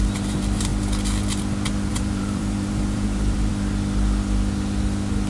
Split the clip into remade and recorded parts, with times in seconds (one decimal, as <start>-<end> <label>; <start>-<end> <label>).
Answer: 0.0-0.7 remade; 0.7-1.9 recorded; 1.9-3.5 remade; 3.5-5.3 recorded